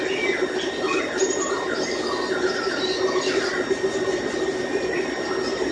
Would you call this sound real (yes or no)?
yes